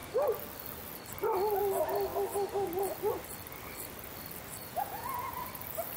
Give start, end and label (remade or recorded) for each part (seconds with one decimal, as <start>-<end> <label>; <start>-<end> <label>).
0.0-4.6 recorded; 4.6-5.4 remade; 5.4-6.0 recorded